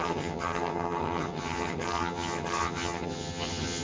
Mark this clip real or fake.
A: fake